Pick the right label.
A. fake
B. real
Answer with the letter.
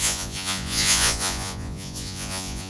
A